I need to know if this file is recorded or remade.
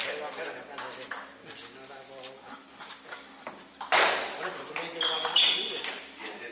recorded